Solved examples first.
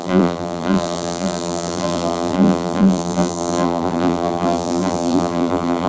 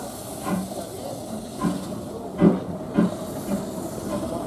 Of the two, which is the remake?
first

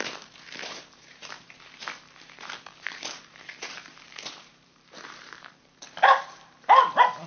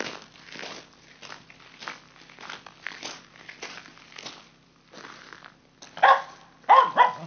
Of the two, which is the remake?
first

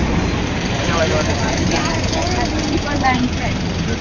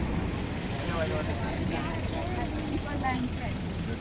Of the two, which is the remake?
first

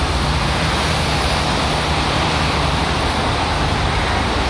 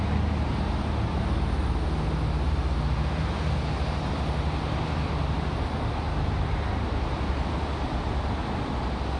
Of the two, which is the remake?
first